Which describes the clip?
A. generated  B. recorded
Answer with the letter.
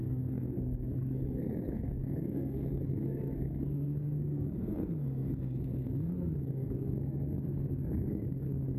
A